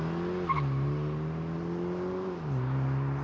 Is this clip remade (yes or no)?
no